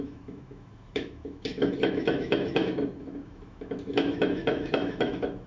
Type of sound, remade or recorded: remade